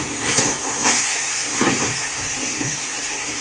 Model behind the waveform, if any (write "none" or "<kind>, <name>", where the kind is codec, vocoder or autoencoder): codec, SNAC